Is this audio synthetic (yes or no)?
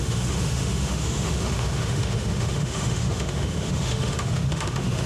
yes